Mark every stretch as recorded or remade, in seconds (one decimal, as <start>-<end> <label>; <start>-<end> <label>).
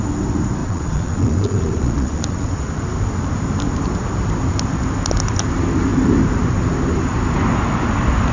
0.0-0.6 recorded; 0.6-2.7 remade; 2.7-8.3 recorded